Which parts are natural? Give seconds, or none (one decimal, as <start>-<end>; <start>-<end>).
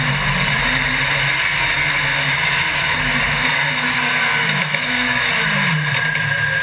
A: 0.0-2.1; 5.3-6.6